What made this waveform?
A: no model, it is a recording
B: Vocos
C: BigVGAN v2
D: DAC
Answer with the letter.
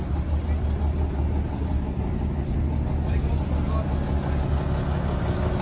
A